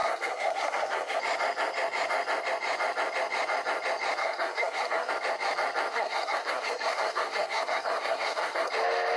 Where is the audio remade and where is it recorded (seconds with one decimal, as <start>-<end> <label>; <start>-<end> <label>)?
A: 0.0-1.2 remade; 1.2-4.2 recorded; 4.2-5.1 remade; 5.1-5.9 recorded; 5.9-8.7 remade; 8.7-9.2 recorded